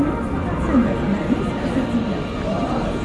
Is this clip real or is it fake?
real